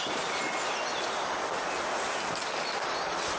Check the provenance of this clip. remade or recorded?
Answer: recorded